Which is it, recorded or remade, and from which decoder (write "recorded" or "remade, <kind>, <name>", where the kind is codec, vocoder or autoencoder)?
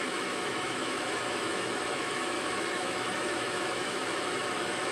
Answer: remade, autoencoder, DAC-VAE